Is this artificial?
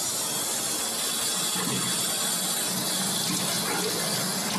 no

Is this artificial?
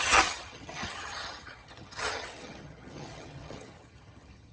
yes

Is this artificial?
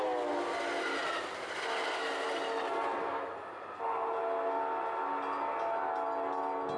no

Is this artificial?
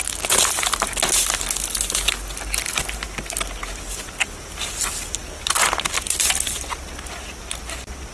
no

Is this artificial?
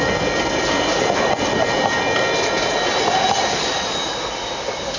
no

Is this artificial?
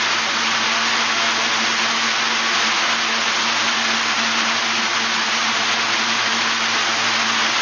no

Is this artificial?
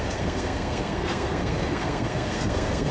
yes